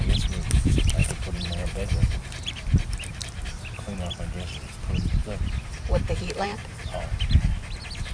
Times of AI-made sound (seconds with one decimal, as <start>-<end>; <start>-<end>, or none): 1.0-4.1; 5.2-7.2